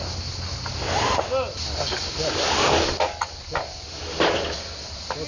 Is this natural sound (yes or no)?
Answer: yes